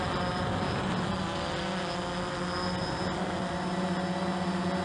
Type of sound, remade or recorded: recorded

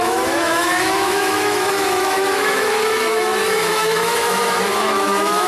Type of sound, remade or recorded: remade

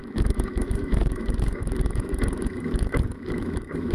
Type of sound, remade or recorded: remade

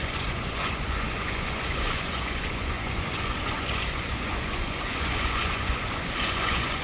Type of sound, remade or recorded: remade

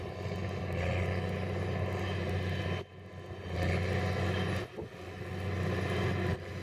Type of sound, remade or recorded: recorded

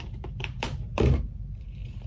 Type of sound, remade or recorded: remade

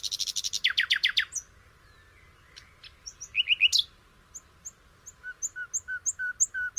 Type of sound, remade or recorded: recorded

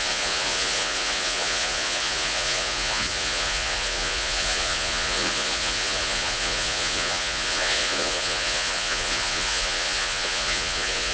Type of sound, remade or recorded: remade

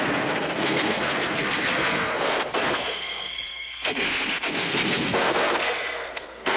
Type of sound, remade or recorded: remade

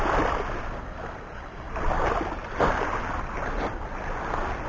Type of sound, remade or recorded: recorded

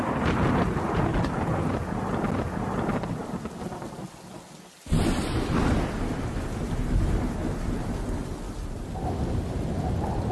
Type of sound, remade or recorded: recorded